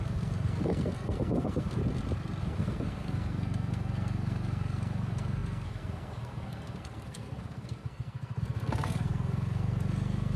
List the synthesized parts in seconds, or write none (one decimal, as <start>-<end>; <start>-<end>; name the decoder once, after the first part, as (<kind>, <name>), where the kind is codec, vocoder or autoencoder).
0.0-1.8 (codec, SNAC); 2.4-10.4